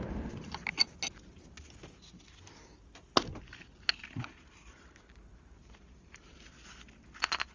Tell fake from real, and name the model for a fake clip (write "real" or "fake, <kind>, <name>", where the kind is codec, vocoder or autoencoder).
real